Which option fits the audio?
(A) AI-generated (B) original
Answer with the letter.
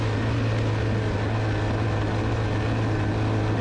B